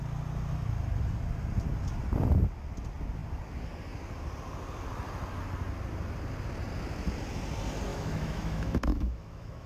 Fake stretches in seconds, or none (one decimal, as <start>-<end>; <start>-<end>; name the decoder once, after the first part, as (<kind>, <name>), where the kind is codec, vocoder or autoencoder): 7.9-9.7 (autoencoder, DAC-VAE)